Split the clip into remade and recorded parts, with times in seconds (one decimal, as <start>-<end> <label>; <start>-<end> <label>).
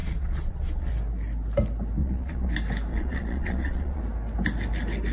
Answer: 0.0-0.9 remade; 0.9-2.0 recorded; 2.0-2.5 remade; 2.5-2.9 recorded; 2.9-4.0 remade; 4.0-5.1 recorded